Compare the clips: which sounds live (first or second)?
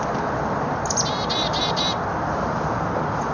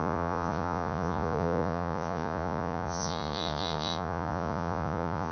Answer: first